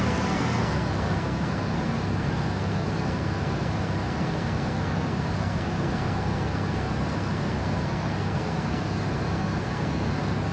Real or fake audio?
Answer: fake